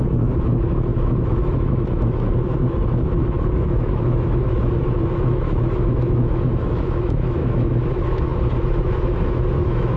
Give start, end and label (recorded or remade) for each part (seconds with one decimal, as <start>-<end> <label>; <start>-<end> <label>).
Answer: 0.0-10.0 remade